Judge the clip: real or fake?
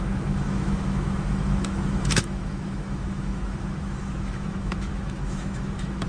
fake